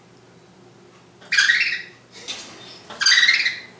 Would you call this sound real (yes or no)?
yes